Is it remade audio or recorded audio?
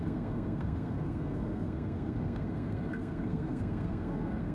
remade